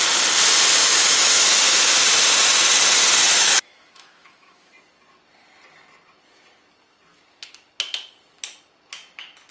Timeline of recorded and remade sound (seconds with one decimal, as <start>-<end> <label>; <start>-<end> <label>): 0.0-0.8 recorded; 0.8-1.9 remade; 1.9-3.3 recorded; 3.3-4.7 remade; 4.7-9.5 recorded